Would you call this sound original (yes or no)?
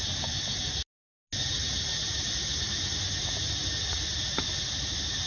yes